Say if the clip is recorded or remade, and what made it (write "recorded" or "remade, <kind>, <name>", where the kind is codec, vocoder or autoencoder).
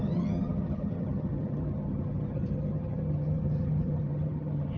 remade, vocoder, HiFi-GAN